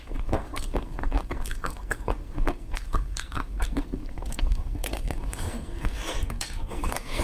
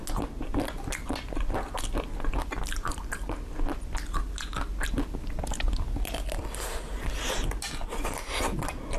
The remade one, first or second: first